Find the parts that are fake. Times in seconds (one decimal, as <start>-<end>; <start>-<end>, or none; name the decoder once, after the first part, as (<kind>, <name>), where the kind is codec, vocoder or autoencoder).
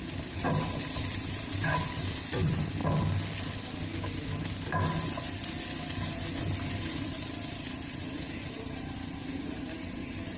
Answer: 0.0-2.8 (vocoder, BigVGAN v2); 7.2-10.4